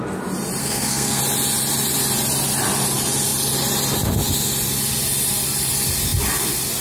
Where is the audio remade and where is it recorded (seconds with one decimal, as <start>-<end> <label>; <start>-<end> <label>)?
0.0-0.6 recorded; 0.6-1.2 remade; 1.2-6.8 recorded